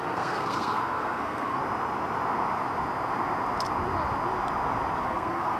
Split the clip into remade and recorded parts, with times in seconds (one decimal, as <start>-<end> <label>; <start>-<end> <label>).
0.0-1.6 remade; 1.6-5.0 recorded; 5.0-5.6 remade